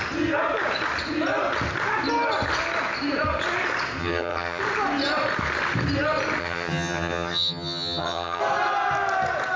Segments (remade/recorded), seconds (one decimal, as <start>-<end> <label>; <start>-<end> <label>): 0.0-4.0 recorded; 4.0-4.6 remade; 4.6-6.4 recorded; 6.4-8.4 remade; 8.4-9.6 recorded